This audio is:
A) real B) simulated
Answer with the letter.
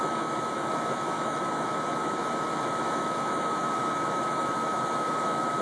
B